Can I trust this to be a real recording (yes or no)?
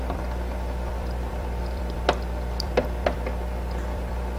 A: no